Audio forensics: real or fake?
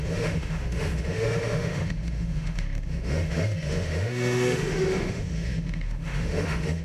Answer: fake